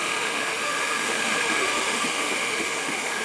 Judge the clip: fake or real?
fake